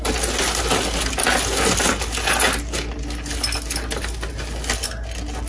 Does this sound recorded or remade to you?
recorded